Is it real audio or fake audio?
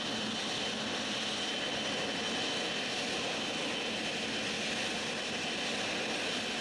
real